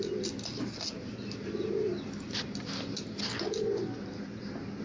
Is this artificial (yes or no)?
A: no